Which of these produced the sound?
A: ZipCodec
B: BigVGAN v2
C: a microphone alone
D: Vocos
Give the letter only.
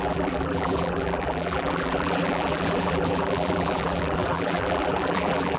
B